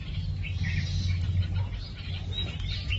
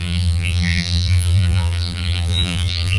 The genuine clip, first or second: first